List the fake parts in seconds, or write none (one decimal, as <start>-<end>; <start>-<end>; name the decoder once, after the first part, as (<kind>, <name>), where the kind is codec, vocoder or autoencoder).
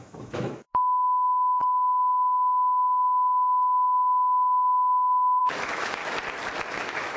0.0-6.0 (autoencoder, DAC-VAE); 6.8-7.2